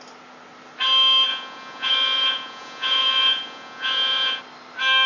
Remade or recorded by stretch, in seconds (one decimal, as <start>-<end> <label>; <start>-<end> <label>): 0.0-1.3 recorded; 1.3-4.4 remade; 4.4-5.1 recorded